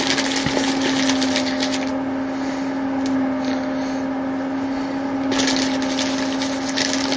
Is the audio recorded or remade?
recorded